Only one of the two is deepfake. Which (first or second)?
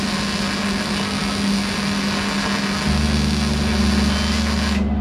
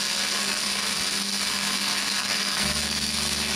second